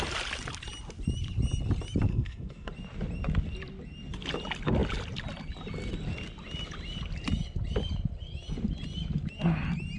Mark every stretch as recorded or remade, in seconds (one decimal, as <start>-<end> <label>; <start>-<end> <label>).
0.0-2.1 recorded; 2.1-2.7 remade; 2.7-10.0 recorded